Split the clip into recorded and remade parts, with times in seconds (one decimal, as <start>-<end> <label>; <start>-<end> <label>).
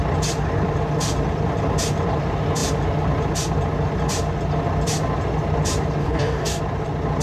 0.0-6.0 recorded; 6.0-6.6 remade; 6.6-7.2 recorded